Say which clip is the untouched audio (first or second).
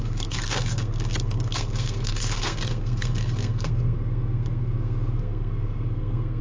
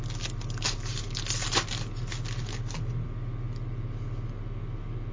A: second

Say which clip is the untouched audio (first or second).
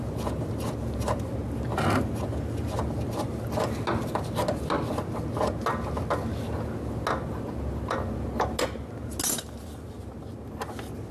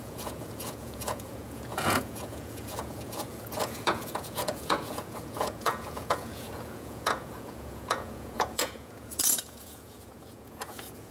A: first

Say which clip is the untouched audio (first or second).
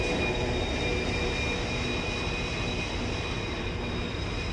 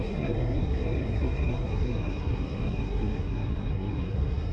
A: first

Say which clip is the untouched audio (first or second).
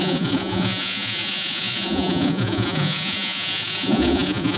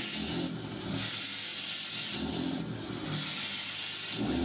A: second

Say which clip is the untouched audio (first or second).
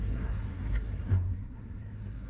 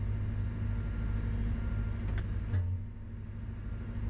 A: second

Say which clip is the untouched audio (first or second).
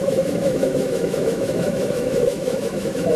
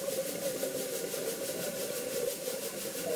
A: second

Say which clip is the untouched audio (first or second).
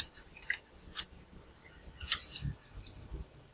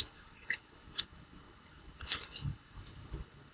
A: first